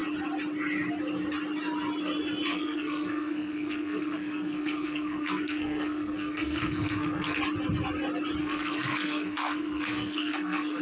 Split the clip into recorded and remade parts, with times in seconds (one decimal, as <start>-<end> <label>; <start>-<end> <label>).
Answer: 0.0-2.5 recorded; 2.5-7.4 remade; 7.4-8.4 recorded; 8.4-10.8 remade